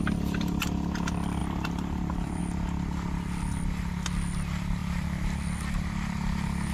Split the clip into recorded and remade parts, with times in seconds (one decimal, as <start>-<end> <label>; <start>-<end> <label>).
0.0-1.4 recorded; 1.4-2.4 remade; 2.4-6.7 recorded